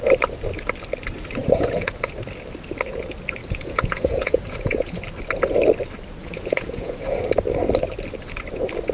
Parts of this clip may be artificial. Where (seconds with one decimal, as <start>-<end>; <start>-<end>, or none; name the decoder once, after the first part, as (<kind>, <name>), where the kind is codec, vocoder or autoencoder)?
1.4-2.1 (vocoder, Vocos); 3.4-5.0; 6.2-7.2